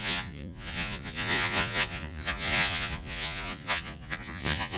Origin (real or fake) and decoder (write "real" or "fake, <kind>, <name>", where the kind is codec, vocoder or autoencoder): fake, vocoder, Vocos